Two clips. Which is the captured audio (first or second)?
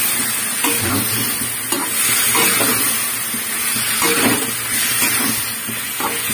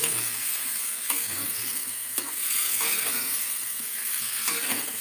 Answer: first